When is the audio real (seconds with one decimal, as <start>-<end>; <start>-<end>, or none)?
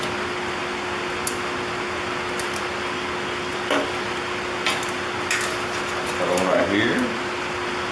0.0-7.9